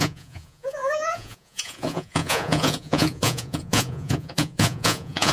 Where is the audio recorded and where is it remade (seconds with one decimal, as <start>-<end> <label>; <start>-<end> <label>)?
0.0-5.3 remade